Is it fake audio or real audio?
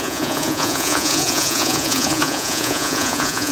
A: fake